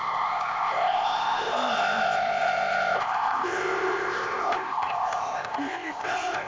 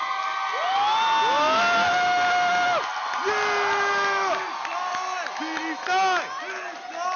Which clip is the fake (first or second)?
first